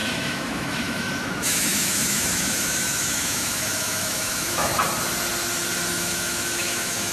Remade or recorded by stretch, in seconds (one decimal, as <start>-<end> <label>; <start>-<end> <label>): 0.0-4.7 remade; 4.7-5.9 recorded; 5.9-7.1 remade

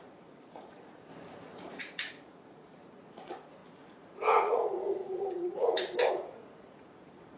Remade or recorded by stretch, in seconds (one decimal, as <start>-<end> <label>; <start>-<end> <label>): 0.0-7.4 remade

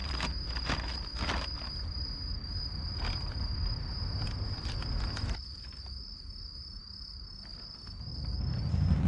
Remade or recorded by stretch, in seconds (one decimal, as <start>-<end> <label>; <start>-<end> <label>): 0.0-9.1 recorded